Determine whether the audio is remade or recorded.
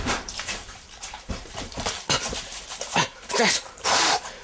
remade